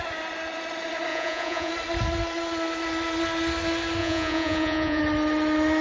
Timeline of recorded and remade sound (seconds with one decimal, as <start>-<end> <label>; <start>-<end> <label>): 0.0-1.1 recorded; 1.1-1.7 remade; 1.7-4.0 recorded; 4.0-5.0 remade; 5.0-5.8 recorded